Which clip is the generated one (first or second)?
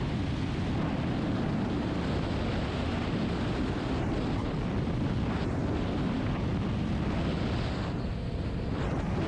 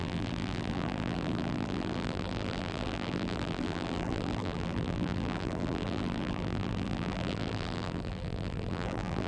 second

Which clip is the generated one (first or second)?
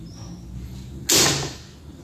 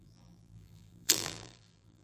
second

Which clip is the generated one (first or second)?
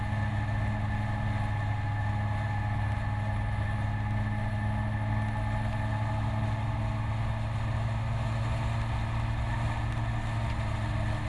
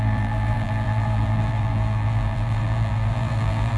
second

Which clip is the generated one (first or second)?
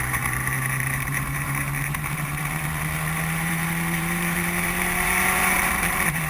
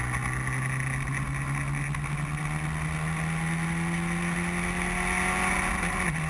first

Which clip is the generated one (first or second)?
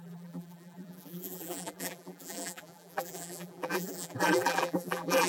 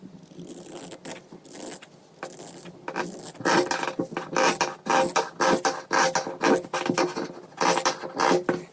first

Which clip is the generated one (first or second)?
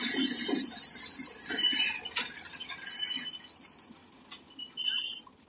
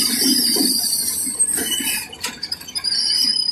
second